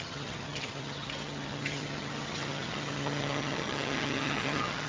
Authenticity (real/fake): fake